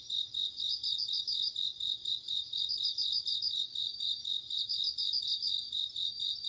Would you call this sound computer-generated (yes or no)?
yes